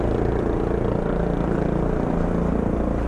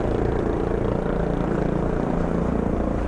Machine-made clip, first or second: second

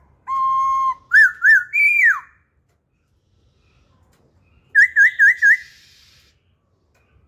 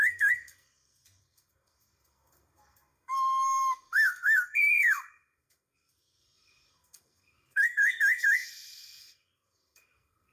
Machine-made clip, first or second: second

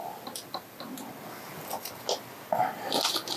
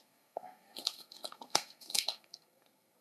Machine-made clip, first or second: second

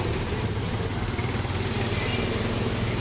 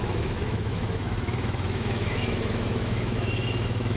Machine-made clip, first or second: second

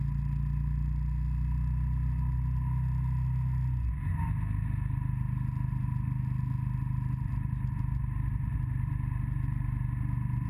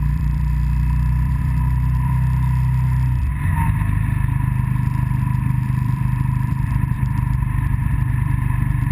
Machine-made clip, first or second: second